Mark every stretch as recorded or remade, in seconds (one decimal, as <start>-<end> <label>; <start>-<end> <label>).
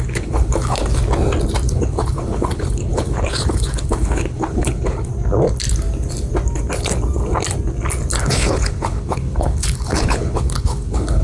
0.0-0.8 remade; 0.8-1.7 recorded; 1.7-5.1 remade; 5.1-8.2 recorded; 8.2-11.2 remade